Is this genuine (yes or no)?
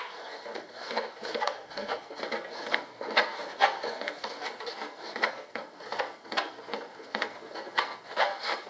no